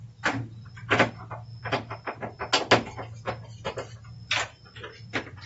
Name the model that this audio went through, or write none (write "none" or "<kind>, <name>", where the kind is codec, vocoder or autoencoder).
none